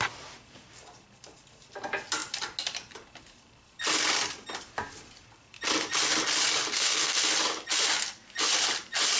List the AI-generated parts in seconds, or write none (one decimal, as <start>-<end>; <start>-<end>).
6.7-7.2